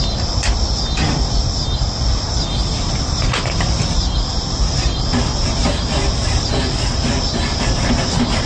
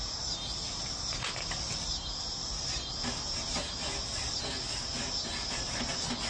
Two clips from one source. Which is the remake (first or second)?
first